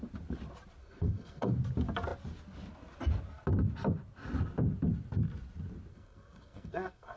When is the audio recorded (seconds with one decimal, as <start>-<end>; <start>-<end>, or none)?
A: 0.0-0.8; 1.5-5.9